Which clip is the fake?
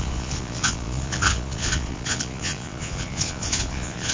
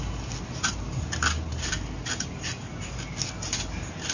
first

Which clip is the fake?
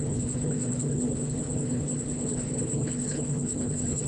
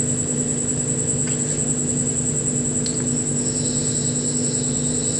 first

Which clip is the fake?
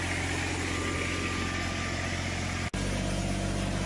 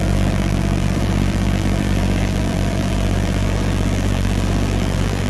second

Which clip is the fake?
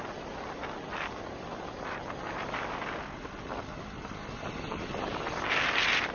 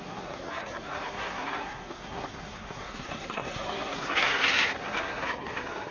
second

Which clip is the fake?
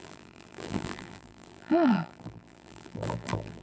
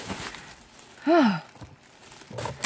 first